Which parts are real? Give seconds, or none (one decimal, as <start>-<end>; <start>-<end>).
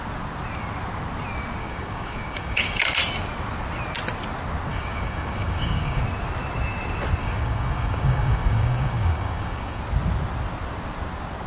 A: 0.0-1.6; 2.8-4.7; 6.0-7.2; 9.8-11.5